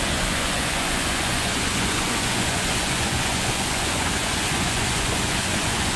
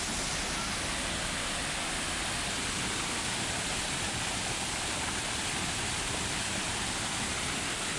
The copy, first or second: first